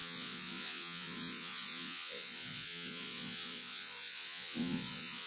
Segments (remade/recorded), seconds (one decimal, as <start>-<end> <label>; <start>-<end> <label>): 0.0-5.3 remade